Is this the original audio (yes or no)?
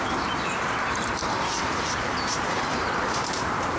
no